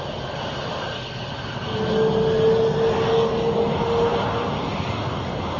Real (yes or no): yes